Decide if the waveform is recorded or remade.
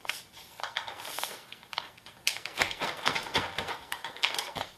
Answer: remade